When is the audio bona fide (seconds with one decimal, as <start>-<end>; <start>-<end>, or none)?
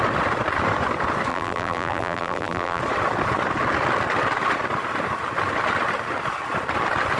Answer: 0.0-1.3; 2.8-7.2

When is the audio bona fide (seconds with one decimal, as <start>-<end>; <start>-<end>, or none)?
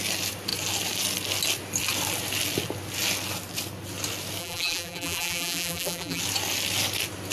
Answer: 0.0-4.4; 6.2-7.3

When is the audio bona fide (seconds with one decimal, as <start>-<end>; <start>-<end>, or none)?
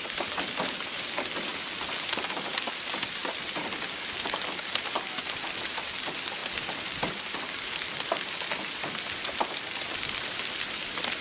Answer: 1.5-2.5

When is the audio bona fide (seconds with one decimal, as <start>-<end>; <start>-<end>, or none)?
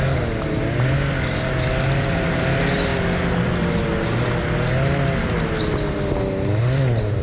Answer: 0.0-7.2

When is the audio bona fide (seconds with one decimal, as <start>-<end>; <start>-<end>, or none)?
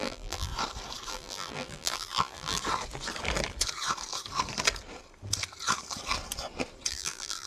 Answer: 0.5-1.1; 2.6-6.9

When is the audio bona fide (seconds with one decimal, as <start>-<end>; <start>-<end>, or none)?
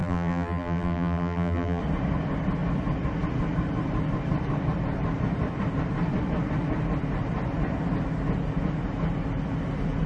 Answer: 1.8-10.1